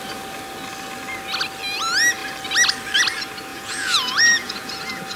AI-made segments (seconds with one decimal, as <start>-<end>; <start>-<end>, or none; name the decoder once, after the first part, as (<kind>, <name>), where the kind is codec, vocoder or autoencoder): 3.5-4.7 (vocoder, Vocos)